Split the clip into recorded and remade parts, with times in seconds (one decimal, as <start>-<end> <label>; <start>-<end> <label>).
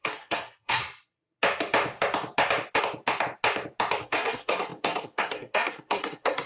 0.0-0.8 remade; 0.8-4.0 recorded; 4.0-6.5 remade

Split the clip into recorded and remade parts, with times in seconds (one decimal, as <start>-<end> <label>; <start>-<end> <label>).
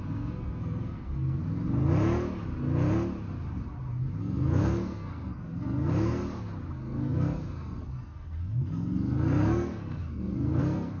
0.0-1.4 remade; 1.4-4.1 recorded; 4.1-6.2 remade; 6.2-6.7 recorded; 6.7-11.0 remade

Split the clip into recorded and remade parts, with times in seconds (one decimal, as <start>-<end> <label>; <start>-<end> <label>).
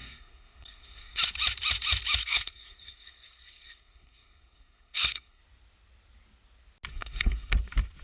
0.0-1.2 remade; 1.2-2.2 recorded; 2.2-5.4 remade; 5.4-6.9 recorded; 6.9-7.5 remade; 7.5-8.0 recorded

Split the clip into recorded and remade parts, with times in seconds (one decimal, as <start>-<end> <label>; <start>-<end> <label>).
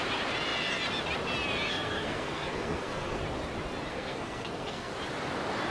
0.0-1.7 recorded; 1.7-3.2 remade; 3.2-3.9 recorded; 3.9-4.9 remade; 4.9-5.7 recorded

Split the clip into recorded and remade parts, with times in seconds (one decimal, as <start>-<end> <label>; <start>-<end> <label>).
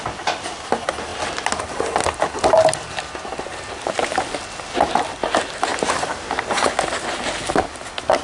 0.0-8.2 recorded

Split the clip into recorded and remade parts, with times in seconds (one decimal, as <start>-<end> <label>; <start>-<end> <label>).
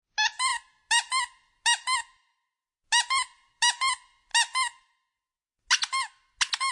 0.0-6.7 recorded